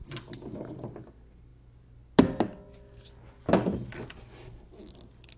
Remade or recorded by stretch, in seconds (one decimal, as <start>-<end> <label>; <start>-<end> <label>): 0.0-5.4 recorded